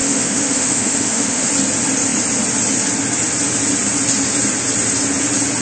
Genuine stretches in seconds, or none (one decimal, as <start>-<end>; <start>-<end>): 1.5-5.6

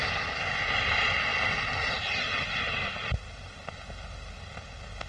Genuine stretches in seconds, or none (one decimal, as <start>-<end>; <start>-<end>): 0.0-5.1

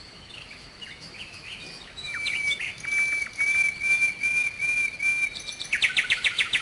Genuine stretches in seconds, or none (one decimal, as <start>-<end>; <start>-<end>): 2.7-6.1

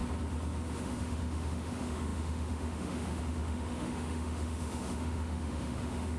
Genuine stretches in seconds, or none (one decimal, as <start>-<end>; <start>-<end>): 0.0-0.8